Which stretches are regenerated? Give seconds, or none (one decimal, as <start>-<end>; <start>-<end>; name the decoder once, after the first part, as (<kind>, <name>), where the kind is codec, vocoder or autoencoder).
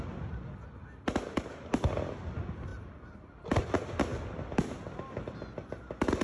none